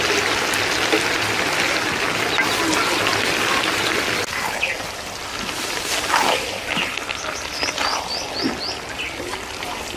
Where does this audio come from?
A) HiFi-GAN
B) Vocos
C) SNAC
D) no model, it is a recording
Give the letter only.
D